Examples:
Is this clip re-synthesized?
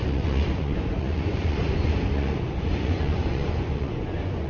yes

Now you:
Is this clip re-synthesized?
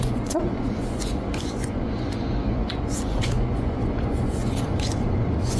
yes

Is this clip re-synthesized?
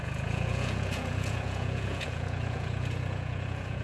yes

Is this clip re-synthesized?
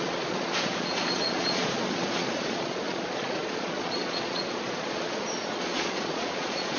yes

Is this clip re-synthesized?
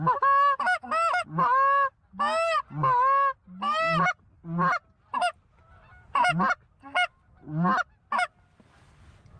no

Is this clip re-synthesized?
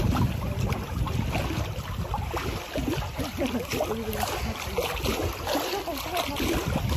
no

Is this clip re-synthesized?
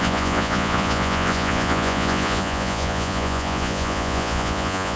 yes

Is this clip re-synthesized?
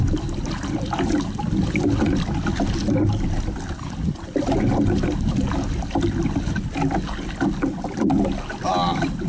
no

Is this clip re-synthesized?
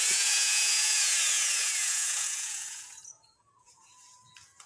yes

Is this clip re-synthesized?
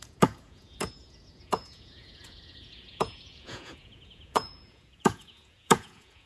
yes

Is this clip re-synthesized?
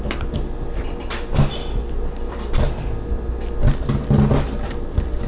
no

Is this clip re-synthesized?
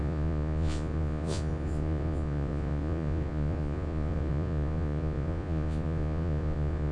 yes